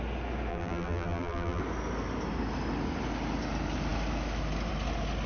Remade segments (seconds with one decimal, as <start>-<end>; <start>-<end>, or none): 0.5-1.6